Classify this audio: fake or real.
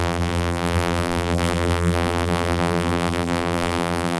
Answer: fake